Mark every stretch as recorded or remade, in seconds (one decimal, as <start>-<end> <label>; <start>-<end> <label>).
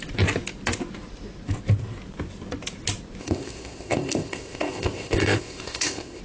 0.0-3.2 recorded; 3.2-6.2 remade